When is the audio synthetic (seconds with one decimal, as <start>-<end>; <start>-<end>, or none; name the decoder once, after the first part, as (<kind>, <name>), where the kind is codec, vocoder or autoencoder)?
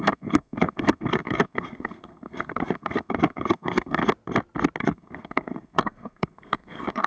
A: 0.0-4.0 (codec, SNAC); 4.8-7.1